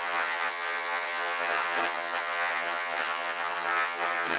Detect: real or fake fake